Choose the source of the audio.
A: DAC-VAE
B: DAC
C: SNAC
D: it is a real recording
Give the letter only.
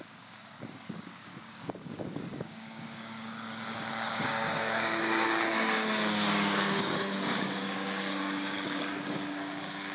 B